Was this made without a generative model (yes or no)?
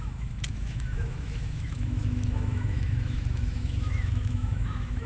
no